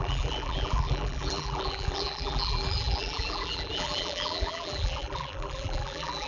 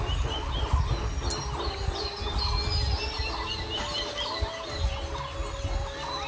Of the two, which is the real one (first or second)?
second